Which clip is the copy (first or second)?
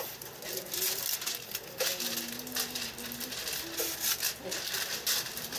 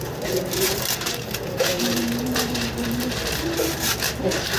second